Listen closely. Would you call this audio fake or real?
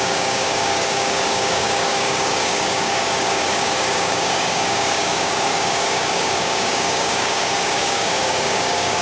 fake